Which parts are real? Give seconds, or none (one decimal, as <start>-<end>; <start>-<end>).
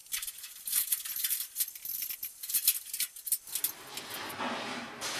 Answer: 3.1-5.2